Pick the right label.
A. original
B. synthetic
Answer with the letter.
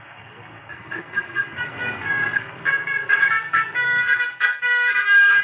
B